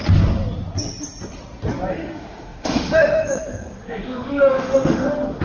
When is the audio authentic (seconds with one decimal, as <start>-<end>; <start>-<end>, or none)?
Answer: 0.0-1.9